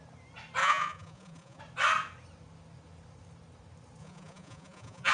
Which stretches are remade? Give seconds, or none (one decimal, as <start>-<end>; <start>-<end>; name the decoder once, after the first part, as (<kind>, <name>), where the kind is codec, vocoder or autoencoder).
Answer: 0.6-1.6 (vocoder, Vocos); 4.0-5.1